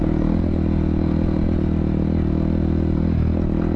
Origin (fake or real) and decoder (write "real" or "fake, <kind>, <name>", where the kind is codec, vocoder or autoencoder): real